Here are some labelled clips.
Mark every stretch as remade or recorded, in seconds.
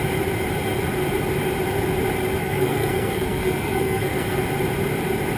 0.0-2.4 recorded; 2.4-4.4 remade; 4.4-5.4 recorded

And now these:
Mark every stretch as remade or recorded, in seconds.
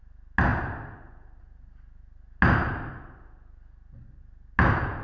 0.0-5.0 recorded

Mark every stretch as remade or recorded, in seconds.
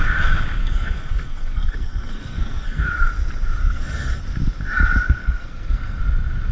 0.0-0.6 recorded; 0.6-2.9 remade; 2.9-3.6 recorded; 3.6-4.2 remade; 4.2-5.2 recorded; 5.2-6.0 remade; 6.0-6.5 recorded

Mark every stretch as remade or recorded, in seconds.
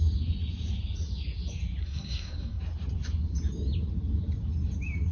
0.0-1.8 recorded; 1.8-2.6 remade; 2.6-5.1 recorded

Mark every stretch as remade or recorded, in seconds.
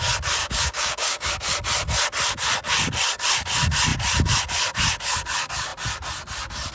0.0-0.4 recorded; 0.4-1.3 remade; 1.3-6.7 recorded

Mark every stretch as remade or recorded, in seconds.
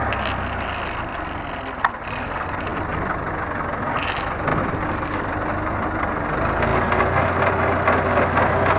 0.0-1.1 recorded; 1.1-2.0 remade; 2.0-2.7 recorded; 2.7-3.3 remade; 3.3-8.8 recorded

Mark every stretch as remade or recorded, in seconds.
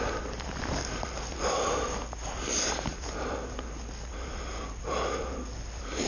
0.0-6.1 recorded